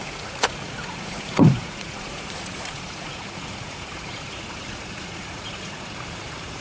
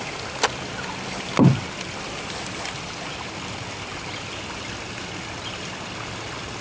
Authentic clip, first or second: second